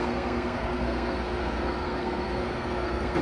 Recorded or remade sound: remade